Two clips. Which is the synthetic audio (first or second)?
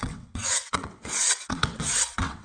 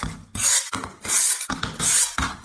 first